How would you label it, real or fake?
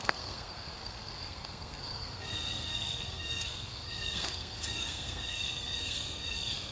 fake